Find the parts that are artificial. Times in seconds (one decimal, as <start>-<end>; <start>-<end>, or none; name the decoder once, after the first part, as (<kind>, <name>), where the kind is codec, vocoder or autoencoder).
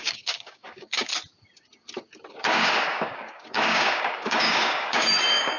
0.0-1.1 (codec, DAC); 2.3-5.6